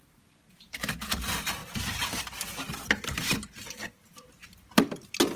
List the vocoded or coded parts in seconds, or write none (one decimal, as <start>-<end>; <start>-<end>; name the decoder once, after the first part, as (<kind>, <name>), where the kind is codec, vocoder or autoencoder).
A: 0.0-5.4 (vocoder, BigVGAN v2)